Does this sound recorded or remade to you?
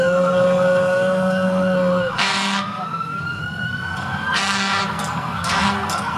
remade